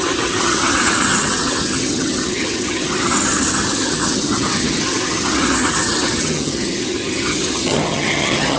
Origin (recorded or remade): remade